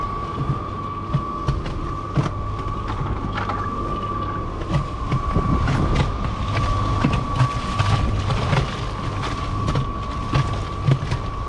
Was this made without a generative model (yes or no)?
yes